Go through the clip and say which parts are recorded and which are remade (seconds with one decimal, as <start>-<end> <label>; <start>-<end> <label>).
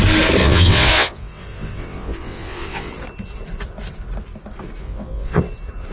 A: 0.0-0.4 recorded; 0.4-2.9 remade; 2.9-4.8 recorded; 4.8-5.4 remade; 5.4-5.9 recorded